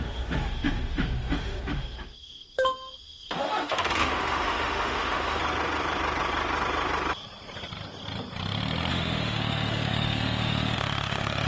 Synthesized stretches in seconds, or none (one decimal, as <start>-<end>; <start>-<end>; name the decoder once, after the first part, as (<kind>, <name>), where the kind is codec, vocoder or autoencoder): 0.0-5.4 (autoencoder, DAC-VAE); 8.9-11.5